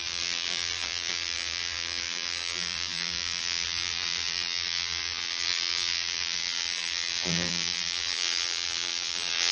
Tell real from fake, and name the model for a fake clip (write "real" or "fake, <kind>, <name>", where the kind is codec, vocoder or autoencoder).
fake, vocoder, BigVGAN v2